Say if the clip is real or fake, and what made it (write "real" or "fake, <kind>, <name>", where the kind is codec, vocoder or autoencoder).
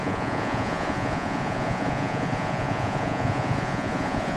fake, vocoder, Vocos